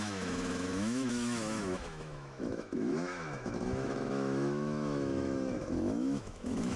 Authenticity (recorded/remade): remade